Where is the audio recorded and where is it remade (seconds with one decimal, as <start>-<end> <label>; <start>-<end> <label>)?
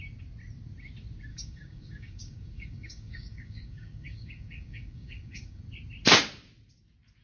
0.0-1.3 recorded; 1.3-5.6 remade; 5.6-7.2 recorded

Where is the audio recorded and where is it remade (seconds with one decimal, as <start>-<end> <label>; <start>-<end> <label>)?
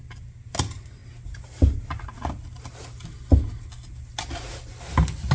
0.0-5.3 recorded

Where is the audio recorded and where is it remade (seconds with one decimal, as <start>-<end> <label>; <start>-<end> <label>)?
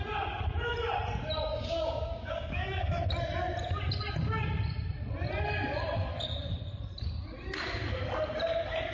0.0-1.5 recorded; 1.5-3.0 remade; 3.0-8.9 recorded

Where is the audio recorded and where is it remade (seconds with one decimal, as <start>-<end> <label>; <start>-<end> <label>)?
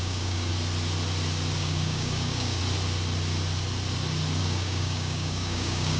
0.0-0.5 remade; 0.5-1.6 recorded; 1.6-2.6 remade; 2.6-4.4 recorded; 4.4-6.0 remade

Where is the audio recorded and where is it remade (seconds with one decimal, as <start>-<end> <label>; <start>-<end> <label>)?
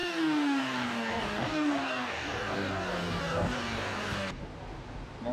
0.0-4.4 remade; 4.4-5.3 recorded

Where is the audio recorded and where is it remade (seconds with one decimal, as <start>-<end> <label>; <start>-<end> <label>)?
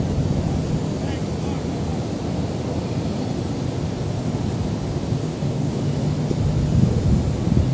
0.0-5.2 recorded; 5.2-5.8 remade; 5.8-7.7 recorded